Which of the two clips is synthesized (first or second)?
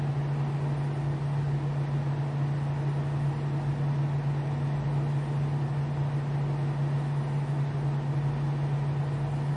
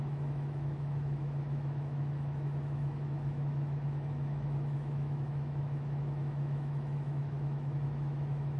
second